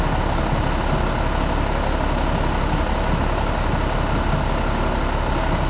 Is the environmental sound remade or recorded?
recorded